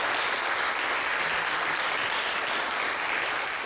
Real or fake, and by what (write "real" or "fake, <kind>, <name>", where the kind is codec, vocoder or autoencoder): real